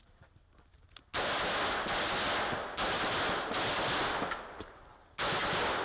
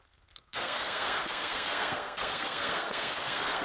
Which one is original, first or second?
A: first